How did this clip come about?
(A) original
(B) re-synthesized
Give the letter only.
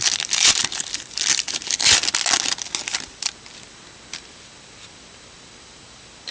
A